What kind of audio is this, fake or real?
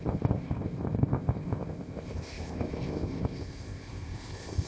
fake